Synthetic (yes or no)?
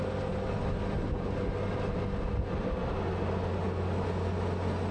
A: no